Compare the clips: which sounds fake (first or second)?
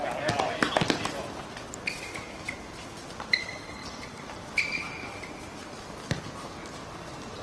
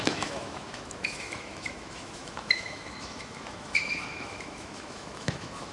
second